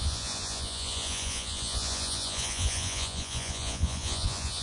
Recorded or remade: remade